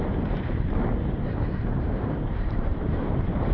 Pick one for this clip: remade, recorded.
remade